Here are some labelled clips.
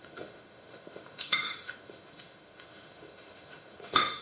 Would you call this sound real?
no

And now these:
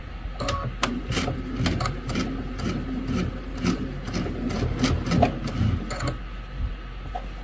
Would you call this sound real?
yes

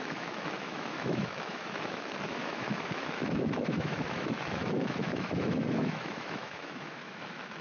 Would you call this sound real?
no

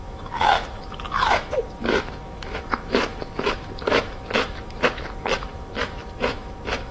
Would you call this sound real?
no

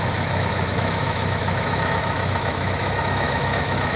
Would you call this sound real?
no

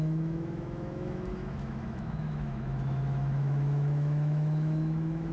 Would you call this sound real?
no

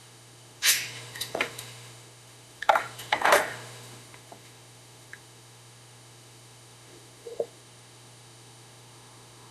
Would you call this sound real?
no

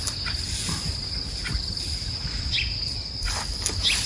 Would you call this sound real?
yes